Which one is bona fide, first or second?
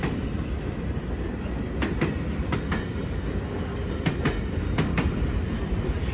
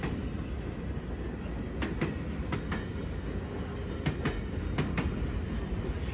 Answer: second